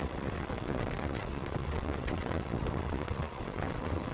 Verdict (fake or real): fake